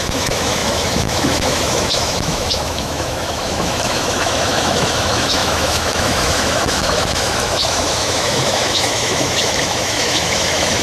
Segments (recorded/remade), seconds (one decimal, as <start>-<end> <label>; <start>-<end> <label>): 0.0-10.8 remade